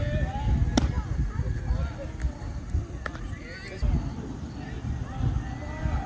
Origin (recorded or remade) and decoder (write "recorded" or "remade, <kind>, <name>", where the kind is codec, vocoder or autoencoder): recorded